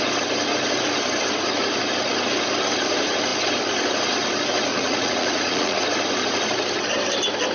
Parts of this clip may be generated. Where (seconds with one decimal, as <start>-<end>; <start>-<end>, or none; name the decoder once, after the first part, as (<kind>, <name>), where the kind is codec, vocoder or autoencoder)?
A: 4.7-5.8 (vocoder, Vocos)